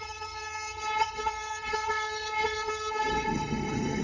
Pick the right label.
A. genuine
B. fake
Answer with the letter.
B